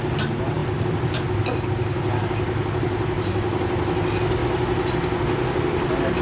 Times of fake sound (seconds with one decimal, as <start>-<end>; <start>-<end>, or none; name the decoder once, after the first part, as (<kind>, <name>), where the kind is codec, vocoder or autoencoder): none